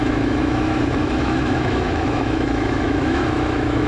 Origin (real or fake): fake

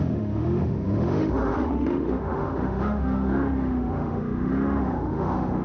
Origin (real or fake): fake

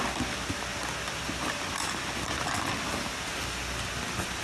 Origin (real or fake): real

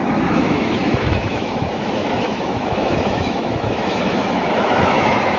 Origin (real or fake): fake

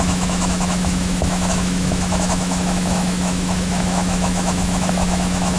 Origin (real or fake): fake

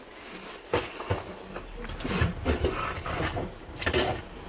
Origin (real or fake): real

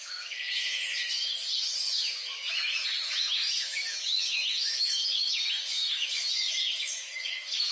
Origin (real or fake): fake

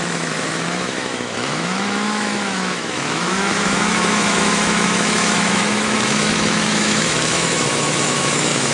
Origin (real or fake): fake